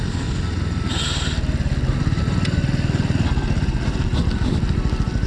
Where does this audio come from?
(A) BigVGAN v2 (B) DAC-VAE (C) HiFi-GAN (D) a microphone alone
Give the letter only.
D